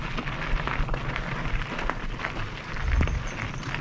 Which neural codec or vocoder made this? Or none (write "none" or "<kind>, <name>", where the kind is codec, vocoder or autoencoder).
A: none